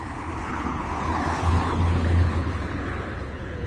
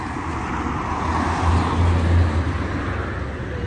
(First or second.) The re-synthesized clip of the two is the first